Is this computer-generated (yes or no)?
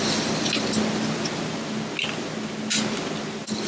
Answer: no